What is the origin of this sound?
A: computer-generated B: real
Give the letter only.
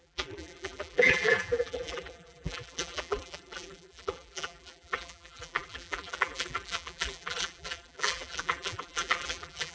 A